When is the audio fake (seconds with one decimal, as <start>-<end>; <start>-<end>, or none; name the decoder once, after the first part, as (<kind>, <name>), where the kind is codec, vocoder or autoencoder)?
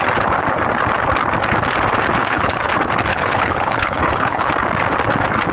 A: 2.2-2.7 (codec, HILCodec); 3.1-4.5